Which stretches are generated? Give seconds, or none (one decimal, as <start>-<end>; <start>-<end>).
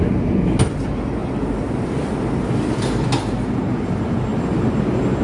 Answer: none